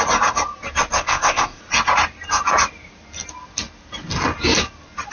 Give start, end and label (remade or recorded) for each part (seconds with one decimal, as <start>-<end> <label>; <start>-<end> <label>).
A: 0.0-1.0 recorded; 1.0-1.6 remade; 1.6-5.1 recorded